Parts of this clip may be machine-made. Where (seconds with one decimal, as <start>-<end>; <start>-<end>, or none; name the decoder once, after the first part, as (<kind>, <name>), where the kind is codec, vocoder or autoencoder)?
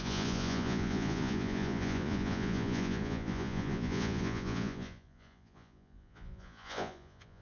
0.0-7.4 (vocoder, Vocos)